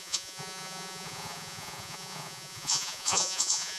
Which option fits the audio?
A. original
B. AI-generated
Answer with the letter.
B